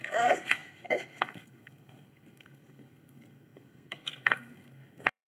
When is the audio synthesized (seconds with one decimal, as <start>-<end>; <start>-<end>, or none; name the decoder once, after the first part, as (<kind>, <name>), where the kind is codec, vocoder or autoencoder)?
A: 0.0-5.4 (codec, SNAC)